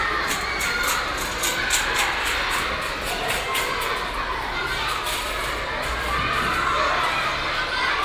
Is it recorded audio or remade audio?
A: recorded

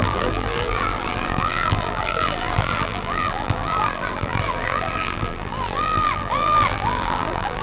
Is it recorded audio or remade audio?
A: remade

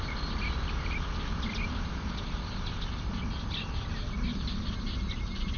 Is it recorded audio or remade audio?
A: recorded